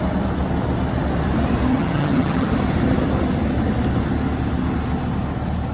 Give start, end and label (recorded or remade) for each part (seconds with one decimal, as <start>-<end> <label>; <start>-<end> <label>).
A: 0.0-1.7 recorded; 1.7-2.5 remade; 2.5-5.7 recorded